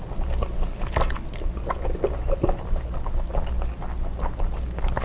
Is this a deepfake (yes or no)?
no